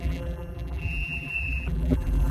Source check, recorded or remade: remade